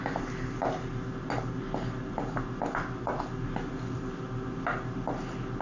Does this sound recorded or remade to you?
recorded